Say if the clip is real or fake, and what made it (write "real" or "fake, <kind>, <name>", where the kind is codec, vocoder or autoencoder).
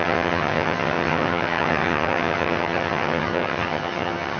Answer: fake, vocoder, HiFi-GAN